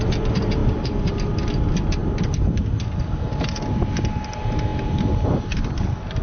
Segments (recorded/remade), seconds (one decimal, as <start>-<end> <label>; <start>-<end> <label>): 0.0-6.2 recorded